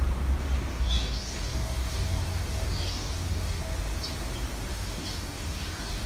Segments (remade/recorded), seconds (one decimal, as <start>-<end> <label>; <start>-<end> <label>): 0.0-0.7 recorded; 0.7-3.6 remade; 3.6-4.7 recorded; 4.7-6.1 remade